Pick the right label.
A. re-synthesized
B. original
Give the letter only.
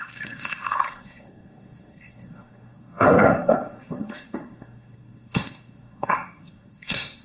A